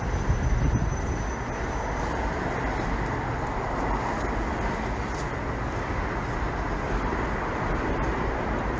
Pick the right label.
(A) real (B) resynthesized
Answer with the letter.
A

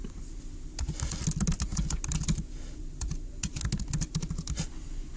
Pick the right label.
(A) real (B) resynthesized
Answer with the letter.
A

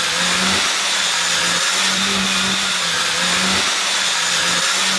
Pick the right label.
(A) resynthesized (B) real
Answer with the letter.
B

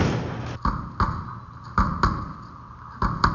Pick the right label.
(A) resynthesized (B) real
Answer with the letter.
B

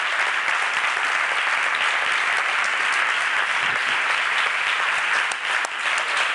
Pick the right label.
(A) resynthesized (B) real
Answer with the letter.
B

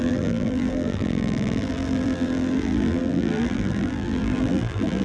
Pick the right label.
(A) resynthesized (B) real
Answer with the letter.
A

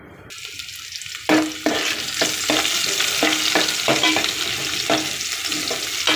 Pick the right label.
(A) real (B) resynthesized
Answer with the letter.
A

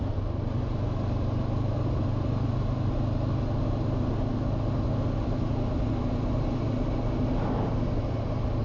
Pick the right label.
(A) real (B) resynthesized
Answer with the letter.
A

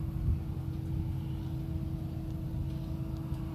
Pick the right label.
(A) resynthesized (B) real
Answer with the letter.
B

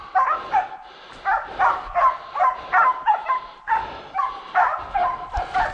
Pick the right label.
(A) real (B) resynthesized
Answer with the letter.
A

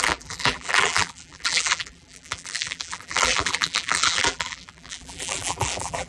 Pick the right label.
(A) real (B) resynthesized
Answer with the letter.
B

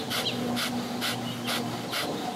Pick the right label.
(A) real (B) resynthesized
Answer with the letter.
B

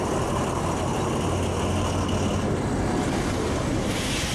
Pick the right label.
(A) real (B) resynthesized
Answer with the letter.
A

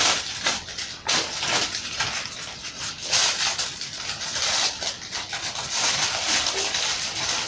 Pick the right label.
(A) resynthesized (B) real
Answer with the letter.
A